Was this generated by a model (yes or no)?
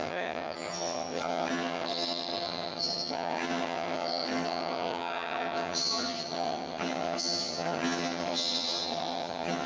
yes